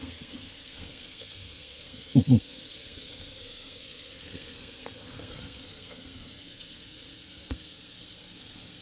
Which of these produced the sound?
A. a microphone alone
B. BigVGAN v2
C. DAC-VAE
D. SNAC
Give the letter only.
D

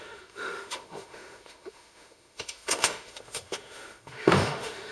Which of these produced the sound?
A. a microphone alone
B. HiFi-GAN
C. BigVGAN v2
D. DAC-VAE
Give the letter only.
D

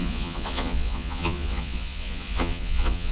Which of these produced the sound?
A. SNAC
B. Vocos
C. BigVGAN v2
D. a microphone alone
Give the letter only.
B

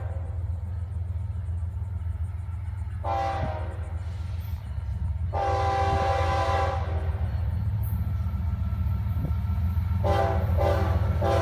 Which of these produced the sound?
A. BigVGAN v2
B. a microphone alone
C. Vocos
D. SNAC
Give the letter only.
B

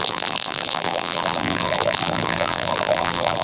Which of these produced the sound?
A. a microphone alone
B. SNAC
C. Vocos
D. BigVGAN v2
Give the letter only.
D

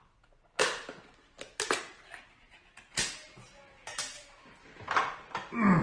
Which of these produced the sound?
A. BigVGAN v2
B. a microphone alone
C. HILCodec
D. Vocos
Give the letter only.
B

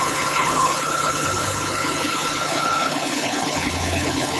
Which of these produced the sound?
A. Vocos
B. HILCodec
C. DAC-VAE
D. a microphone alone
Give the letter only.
B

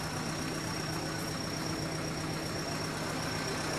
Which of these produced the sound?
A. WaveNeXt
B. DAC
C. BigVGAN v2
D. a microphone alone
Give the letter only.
D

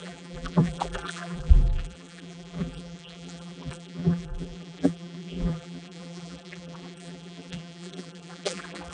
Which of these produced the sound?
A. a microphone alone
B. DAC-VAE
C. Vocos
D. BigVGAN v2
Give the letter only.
D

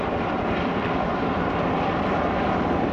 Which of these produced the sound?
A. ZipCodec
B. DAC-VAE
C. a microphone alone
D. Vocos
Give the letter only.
C